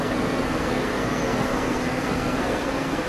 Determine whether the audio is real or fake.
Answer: fake